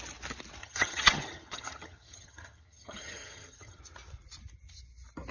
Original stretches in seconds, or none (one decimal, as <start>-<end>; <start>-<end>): 0.0-0.6; 3.8-5.3